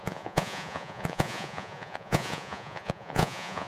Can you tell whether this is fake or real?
fake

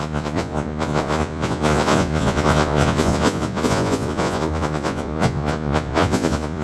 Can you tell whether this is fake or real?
fake